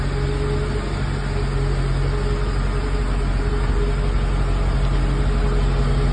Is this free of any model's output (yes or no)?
yes